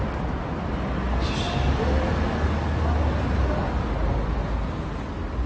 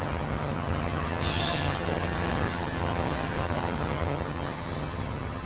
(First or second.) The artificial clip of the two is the second